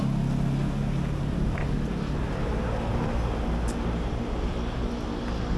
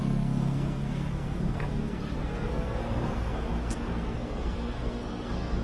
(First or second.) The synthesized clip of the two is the second